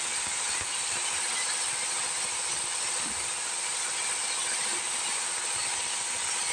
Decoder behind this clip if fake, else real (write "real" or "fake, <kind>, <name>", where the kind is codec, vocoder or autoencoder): real